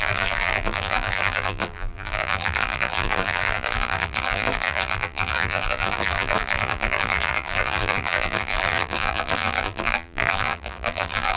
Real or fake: fake